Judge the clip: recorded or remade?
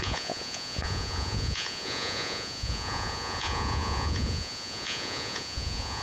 remade